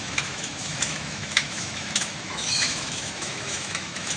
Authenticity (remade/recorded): remade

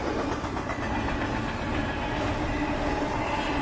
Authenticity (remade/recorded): recorded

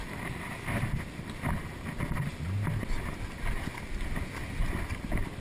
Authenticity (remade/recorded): recorded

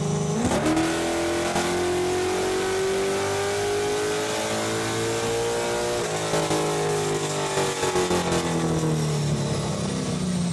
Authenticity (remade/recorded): recorded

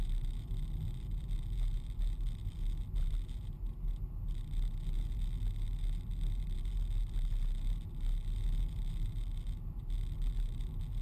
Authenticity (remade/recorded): recorded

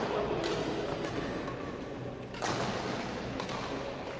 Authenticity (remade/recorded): recorded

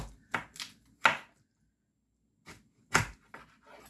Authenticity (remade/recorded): recorded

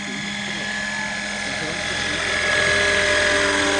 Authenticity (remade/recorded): recorded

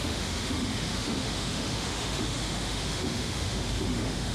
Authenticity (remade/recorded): remade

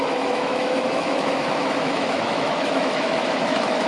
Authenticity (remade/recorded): remade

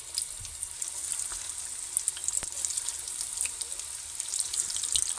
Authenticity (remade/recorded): recorded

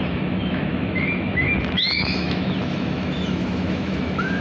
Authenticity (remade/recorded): remade